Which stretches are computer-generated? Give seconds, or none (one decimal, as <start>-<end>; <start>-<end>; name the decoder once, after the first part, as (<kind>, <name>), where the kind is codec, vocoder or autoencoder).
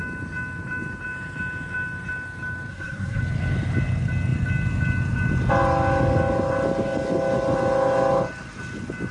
2.7-3.2 (codec, SNAC)